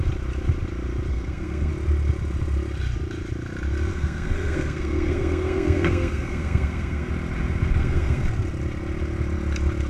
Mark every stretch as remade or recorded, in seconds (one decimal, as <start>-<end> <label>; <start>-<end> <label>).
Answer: 0.0-1.1 recorded; 1.1-1.7 remade; 1.7-3.9 recorded; 3.9-7.1 remade; 7.1-7.8 recorded; 7.8-8.3 remade; 8.3-9.9 recorded